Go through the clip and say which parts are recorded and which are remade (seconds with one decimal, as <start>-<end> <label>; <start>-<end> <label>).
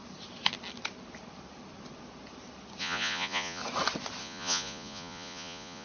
0.0-2.8 recorded; 2.8-3.6 remade; 3.6-4.2 recorded; 4.2-5.8 remade